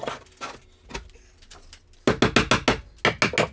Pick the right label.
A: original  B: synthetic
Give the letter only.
A